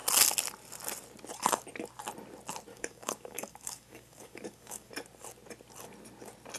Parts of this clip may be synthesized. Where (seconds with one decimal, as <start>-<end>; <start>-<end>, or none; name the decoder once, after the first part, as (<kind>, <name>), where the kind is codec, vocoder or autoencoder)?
2.7-4.9 (codec, DAC)